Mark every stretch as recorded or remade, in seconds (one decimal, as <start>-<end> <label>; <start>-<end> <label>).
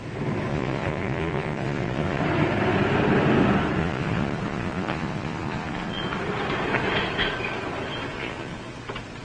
0.0-0.5 recorded; 0.5-2.2 remade; 2.2-3.8 recorded; 3.8-6.0 remade; 6.0-8.1 recorded; 8.1-8.7 remade; 8.7-9.2 recorded